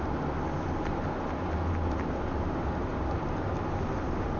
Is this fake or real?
real